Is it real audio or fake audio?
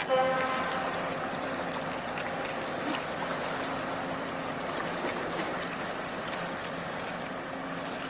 real